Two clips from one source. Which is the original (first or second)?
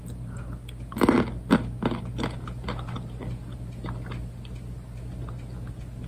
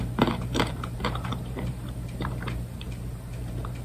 first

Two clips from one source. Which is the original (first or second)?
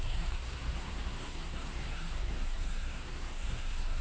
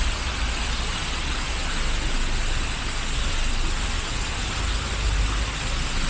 second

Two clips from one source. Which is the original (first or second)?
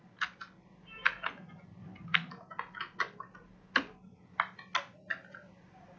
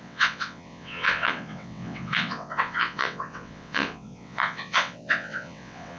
first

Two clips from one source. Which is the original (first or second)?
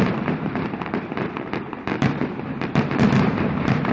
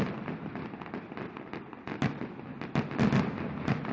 second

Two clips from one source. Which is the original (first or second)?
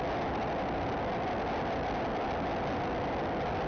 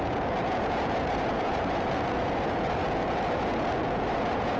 first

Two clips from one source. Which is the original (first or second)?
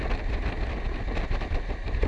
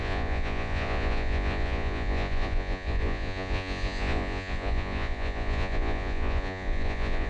first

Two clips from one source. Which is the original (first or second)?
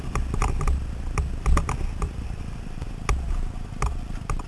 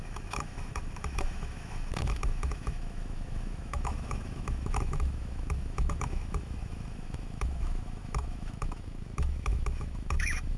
first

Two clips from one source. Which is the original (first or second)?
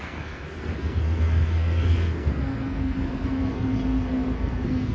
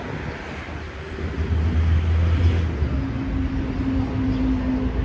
second